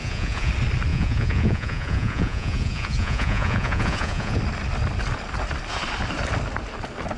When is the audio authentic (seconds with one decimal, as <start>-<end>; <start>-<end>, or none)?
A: 0.5-0.9; 4.4-7.2